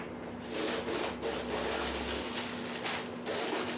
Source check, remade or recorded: recorded